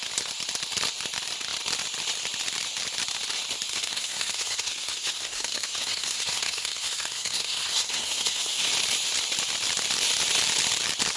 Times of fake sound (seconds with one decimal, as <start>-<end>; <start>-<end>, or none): 3.7-8.7